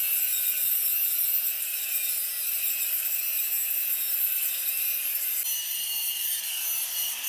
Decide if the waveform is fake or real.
real